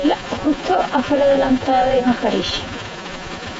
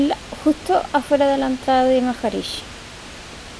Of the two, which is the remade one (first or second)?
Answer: first